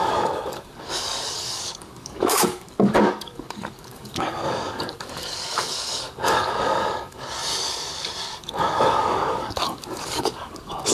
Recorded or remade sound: remade